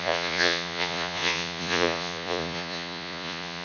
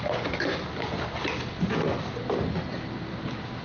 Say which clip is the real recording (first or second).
second